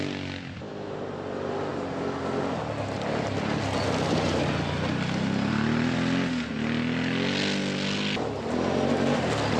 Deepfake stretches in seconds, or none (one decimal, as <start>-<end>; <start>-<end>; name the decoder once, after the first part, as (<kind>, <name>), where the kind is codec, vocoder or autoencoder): none

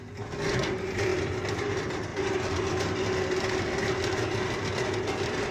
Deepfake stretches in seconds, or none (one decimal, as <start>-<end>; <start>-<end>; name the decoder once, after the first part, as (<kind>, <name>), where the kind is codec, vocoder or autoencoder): 1.1-1.7 (vocoder, BigVGAN v2); 2.1-2.7

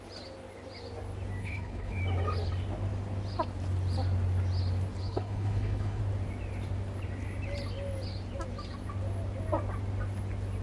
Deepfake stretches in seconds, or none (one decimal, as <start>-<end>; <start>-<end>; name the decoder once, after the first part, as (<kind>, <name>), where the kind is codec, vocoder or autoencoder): 1.4-2.0 (codec, HILCodec); 5.0-6.0

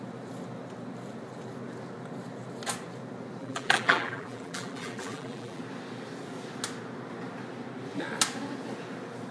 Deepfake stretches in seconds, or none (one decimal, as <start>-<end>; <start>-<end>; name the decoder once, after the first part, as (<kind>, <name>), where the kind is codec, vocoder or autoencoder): 3.4-5.6 (vocoder, BigVGAN v2)

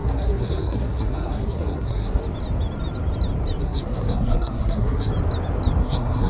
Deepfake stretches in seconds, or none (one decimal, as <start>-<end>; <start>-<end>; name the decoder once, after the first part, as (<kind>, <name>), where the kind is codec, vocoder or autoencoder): 0.0-2.2 (codec, SNAC); 3.6-5.1; 5.8-6.3

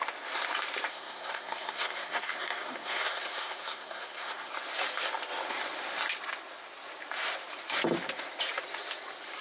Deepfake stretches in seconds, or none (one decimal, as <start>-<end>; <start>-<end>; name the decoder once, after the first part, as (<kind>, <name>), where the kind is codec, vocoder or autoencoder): 0.9-4.5 (codec, SNAC)

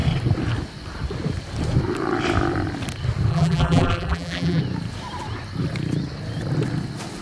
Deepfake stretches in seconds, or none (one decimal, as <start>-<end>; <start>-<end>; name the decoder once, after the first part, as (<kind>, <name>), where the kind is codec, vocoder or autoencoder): 3.3-4.6 (vocoder, BigVGAN v2)